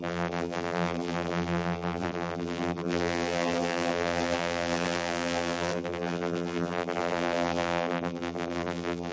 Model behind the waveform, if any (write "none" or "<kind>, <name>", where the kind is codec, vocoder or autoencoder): vocoder, BigVGAN v2